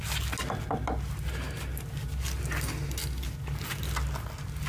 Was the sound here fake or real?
real